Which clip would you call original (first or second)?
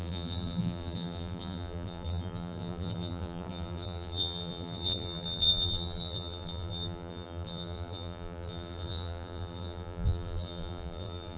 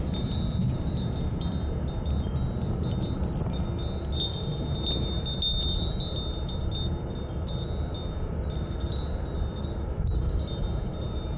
second